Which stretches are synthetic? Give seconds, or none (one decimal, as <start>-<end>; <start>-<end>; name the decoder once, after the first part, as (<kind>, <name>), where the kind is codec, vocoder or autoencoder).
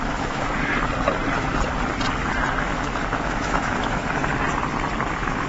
0.0-0.7 (autoencoder, DAC-VAE); 2.6-4.0; 5.1-5.5